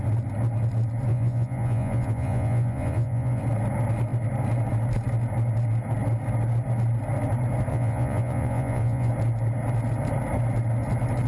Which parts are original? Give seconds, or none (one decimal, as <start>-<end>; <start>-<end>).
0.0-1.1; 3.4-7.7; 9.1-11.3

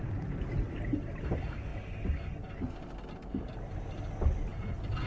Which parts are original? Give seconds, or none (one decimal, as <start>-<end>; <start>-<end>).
0.0-5.1

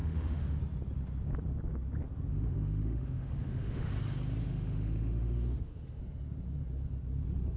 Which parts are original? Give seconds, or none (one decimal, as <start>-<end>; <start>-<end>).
0.6-2.3; 3.9-4.4; 6.0-7.6

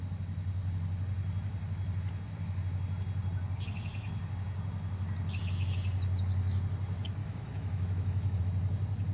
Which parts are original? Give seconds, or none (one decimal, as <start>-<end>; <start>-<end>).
0.0-7.2; 8.4-9.1

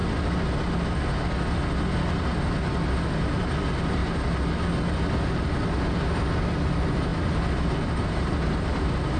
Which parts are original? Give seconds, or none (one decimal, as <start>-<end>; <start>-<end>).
0.0-2.7; 4.0-6.4

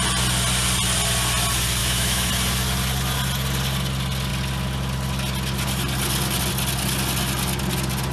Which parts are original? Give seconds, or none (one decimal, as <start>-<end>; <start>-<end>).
0.0-1.8; 2.3-8.1

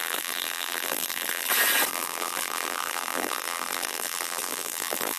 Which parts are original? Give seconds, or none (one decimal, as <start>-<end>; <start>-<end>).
1.5-1.9